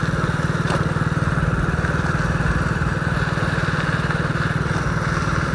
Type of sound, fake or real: real